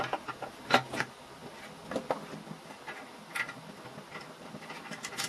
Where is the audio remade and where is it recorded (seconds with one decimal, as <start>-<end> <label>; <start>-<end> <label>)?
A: 0.0-5.3 recorded